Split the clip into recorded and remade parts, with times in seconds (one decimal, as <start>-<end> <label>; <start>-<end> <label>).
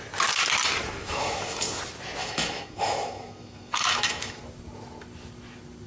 0.0-1.0 recorded; 1.0-1.8 remade; 1.8-2.2 recorded; 2.2-4.4 remade; 4.4-5.9 recorded